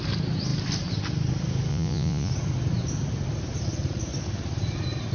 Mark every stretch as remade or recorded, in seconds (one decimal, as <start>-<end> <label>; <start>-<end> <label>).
0.0-1.7 recorded; 1.7-2.3 remade; 2.3-5.1 recorded